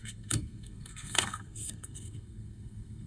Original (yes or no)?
no